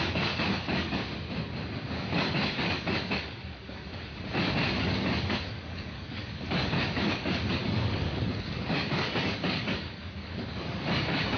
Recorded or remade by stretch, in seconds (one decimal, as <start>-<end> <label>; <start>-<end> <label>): 0.0-1.0 remade; 1.0-1.9 recorded; 1.9-4.1 remade; 4.1-4.8 recorded; 4.8-11.4 remade